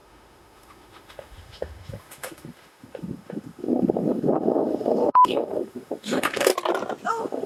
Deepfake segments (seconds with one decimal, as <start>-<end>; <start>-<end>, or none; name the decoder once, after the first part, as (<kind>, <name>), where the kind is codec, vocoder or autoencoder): 0.0-6.5 (autoencoder, DAC-VAE); 7.1-7.5